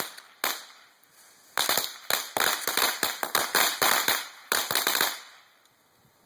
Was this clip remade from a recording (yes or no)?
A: no